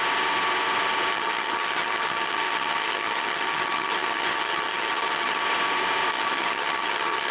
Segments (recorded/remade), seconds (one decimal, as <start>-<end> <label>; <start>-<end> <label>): 0.0-1.1 recorded; 1.1-5.4 remade; 5.4-6.1 recorded; 6.1-7.3 remade